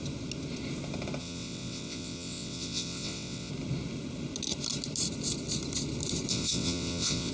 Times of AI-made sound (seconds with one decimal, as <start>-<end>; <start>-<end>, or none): 1.2-3.5; 6.3-7.3